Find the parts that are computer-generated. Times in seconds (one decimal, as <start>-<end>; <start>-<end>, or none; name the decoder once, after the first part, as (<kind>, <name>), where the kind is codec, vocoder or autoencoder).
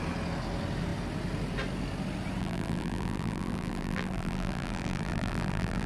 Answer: 2.4-5.9 (vocoder, BigVGAN v2)